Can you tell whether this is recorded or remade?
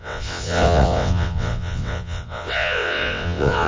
remade